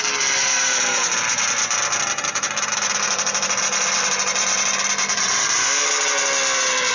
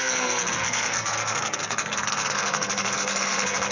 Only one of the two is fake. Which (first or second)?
second